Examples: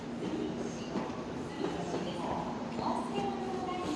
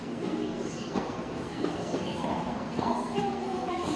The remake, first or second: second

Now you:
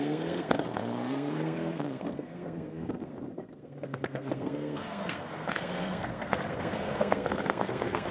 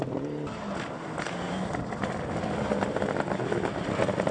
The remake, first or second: first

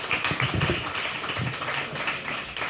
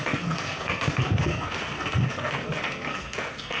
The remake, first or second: second